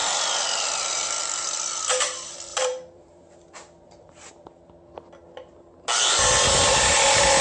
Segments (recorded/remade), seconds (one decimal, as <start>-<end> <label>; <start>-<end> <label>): 0.0-2.5 recorded; 2.5-4.3 remade; 4.3-7.4 recorded